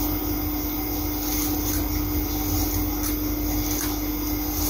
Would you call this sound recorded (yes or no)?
yes